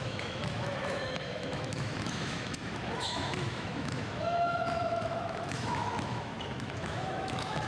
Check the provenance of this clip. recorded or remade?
remade